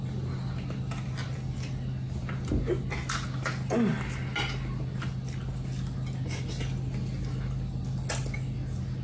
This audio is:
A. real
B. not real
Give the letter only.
A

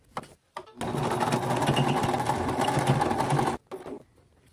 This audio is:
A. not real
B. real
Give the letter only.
B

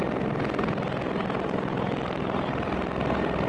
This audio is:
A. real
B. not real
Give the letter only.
A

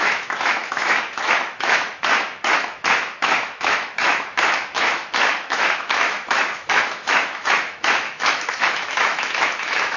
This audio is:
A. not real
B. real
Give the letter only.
A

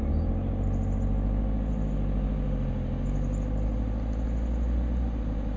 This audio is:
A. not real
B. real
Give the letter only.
B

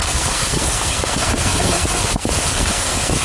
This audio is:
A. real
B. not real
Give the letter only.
B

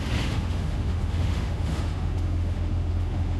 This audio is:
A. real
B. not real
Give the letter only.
B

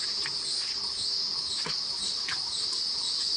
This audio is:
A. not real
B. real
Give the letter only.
B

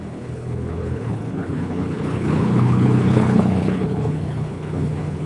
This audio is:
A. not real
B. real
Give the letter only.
A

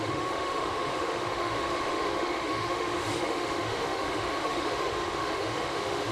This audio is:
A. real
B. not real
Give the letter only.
B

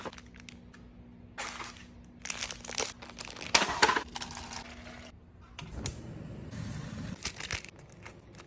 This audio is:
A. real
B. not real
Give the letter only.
A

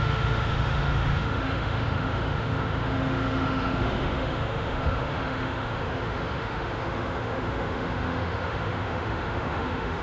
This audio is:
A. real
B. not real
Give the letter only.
B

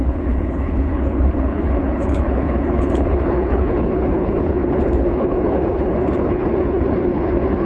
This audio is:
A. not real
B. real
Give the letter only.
A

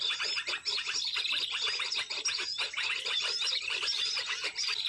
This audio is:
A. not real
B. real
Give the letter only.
B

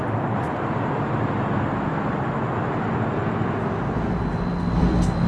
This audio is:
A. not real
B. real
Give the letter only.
B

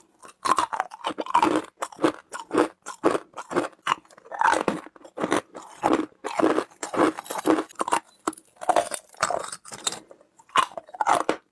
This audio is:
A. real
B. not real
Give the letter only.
A